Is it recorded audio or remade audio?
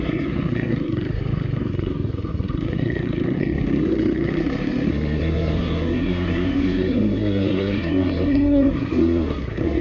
remade